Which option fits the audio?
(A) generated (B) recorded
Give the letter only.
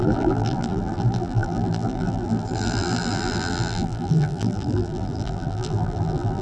A